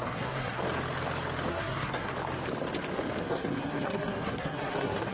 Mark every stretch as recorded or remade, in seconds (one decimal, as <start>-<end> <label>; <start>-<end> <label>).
0.0-0.6 remade; 0.6-1.5 recorded; 1.5-2.1 remade; 2.1-3.2 recorded; 3.2-5.1 remade